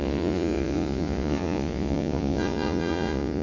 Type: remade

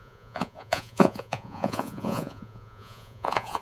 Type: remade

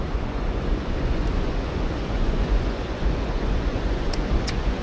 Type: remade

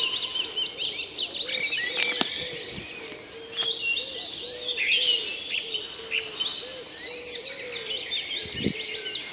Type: recorded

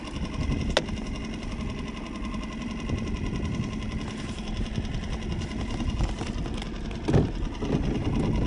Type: recorded